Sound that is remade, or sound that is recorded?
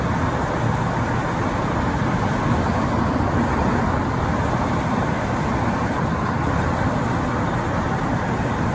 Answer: recorded